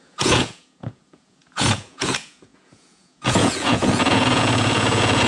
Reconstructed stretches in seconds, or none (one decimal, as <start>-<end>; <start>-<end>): 0.0-5.3